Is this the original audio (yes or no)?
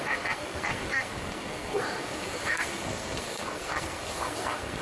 no